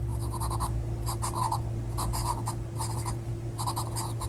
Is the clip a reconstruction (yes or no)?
no